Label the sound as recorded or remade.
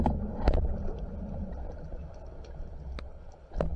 recorded